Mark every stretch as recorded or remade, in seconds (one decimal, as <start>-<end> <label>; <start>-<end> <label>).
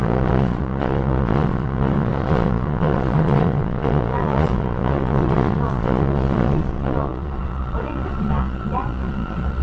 0.0-9.6 remade